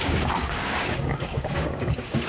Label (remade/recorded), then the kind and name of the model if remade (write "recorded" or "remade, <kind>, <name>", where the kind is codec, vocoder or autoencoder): remade, codec, DAC